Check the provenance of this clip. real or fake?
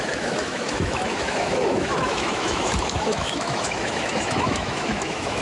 fake